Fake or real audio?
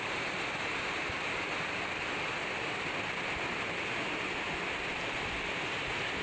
real